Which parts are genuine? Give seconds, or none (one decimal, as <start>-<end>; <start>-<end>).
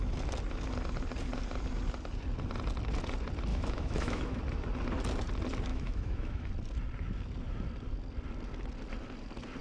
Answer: 0.0-3.5; 4.4-5.7; 6.5-9.6